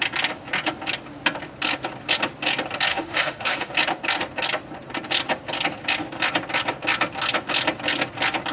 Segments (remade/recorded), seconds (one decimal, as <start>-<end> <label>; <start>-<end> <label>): 0.0-2.9 recorded; 2.9-3.7 remade; 3.7-8.5 recorded